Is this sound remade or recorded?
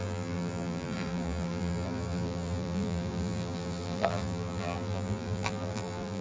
remade